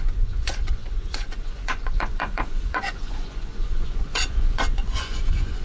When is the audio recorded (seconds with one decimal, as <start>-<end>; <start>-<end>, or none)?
none